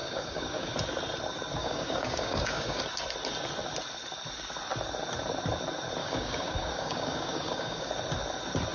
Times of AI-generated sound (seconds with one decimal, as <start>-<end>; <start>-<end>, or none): 0.0-0.7; 1.6-2.8; 6.0-7.9